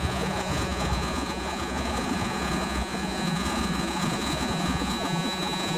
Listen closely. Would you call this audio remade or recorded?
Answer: remade